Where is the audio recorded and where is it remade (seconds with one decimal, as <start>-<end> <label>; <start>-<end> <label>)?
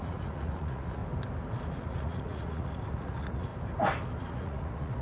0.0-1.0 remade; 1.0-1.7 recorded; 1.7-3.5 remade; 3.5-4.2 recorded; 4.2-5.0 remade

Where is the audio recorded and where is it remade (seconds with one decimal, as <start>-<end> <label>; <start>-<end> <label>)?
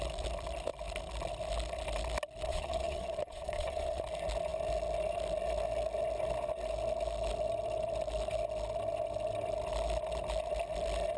0.0-2.5 recorded; 2.5-4.0 remade; 4.0-11.2 recorded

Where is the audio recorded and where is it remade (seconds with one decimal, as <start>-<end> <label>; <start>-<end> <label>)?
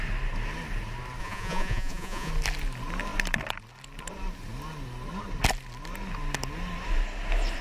0.0-1.2 recorded; 1.2-2.3 remade; 2.3-7.6 recorded